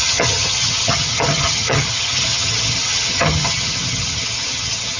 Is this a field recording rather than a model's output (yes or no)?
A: no